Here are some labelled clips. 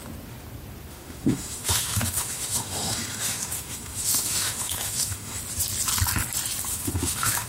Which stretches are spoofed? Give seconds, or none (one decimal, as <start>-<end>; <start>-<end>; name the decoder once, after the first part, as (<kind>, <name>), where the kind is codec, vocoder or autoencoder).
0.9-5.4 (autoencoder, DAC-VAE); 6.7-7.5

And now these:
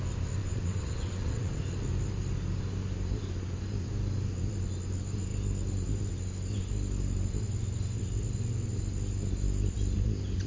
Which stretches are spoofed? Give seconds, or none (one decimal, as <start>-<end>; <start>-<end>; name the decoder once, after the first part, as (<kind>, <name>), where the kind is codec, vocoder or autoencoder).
0.4-1.6 (vocoder, WaveNeXt)

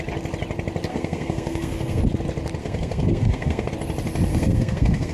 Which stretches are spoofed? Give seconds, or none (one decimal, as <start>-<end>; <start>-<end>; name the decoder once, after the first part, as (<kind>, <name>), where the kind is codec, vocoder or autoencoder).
0.9-2.0 (codec, SNAC); 2.6-3.7; 4.3-5.1

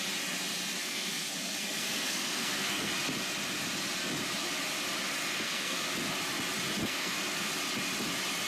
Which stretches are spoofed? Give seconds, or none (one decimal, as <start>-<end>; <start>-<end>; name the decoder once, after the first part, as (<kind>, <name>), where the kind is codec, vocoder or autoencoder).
0.8-2.9 (codec, SNAC); 5.2-5.8; 6.8-7.5